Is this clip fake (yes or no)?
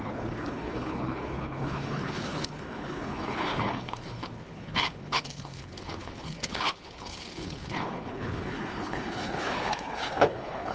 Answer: yes